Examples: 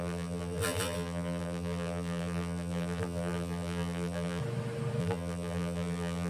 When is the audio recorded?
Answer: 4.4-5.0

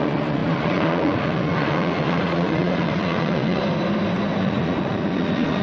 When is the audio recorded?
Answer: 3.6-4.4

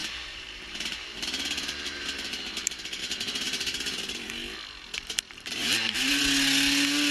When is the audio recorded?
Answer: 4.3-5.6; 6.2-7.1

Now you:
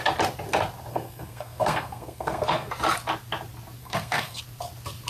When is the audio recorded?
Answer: 0.0-0.9; 2.7-3.8; 4.4-5.1

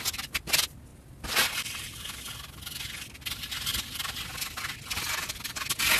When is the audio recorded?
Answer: 0.0-6.0